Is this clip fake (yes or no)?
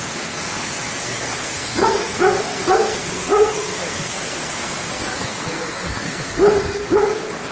yes